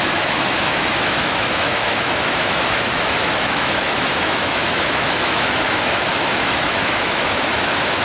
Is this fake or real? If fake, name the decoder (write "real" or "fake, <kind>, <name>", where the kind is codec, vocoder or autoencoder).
fake, autoencoder, DAC-VAE